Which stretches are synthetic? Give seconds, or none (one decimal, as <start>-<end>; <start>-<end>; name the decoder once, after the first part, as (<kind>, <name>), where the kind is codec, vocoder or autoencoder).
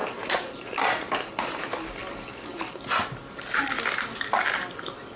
none